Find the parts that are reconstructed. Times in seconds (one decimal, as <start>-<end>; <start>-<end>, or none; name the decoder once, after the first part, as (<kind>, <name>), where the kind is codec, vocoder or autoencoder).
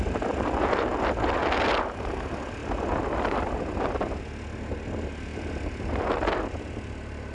2.6-4.2 (vocoder, BigVGAN v2); 5.3-6.3